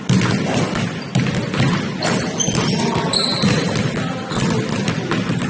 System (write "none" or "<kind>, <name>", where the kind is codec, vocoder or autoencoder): none